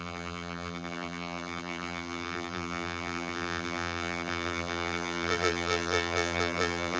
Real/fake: fake